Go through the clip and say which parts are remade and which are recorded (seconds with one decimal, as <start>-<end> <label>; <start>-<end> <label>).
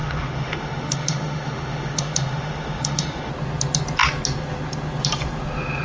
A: 0.0-3.3 remade; 3.3-5.8 recorded